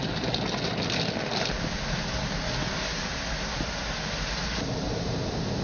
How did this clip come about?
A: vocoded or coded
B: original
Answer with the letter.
B